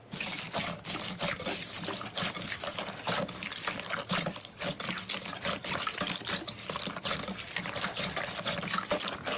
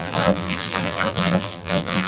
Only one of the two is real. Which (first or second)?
first